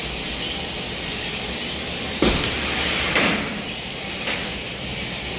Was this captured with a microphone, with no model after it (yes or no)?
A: yes